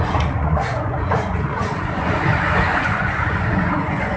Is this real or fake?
fake